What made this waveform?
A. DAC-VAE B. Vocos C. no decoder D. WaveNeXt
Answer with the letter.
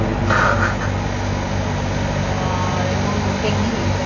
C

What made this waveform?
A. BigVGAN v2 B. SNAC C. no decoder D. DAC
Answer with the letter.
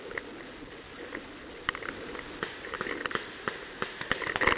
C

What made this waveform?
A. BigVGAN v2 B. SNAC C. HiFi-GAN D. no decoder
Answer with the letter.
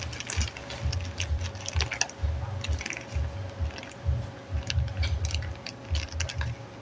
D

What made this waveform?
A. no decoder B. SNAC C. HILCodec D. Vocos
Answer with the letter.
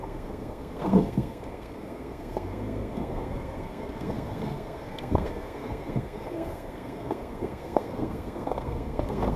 B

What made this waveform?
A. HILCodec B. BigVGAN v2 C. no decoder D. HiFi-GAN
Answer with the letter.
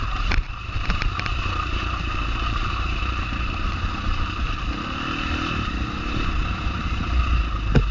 B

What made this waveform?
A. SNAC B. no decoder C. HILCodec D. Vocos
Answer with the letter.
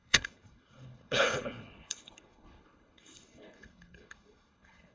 C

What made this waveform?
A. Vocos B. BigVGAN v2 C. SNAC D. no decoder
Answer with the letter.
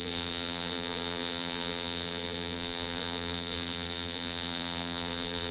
B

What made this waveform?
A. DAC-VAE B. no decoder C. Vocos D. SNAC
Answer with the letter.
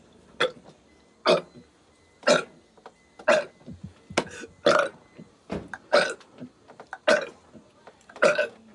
B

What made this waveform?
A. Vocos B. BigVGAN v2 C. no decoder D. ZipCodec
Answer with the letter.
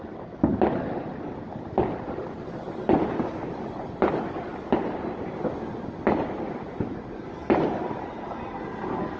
C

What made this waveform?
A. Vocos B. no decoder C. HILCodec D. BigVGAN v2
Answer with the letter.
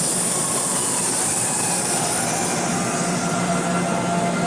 B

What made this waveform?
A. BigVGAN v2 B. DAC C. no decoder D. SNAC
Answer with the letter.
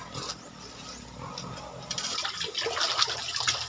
C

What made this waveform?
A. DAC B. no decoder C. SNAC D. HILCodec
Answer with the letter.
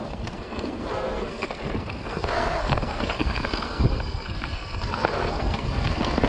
C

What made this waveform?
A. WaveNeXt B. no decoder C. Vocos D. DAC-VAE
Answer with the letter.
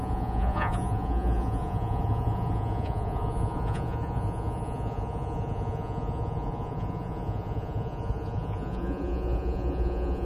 C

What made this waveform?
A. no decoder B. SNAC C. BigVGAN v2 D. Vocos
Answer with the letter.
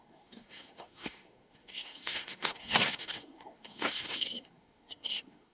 B